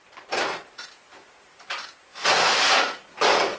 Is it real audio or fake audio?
fake